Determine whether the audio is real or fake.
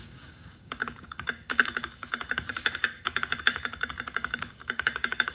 fake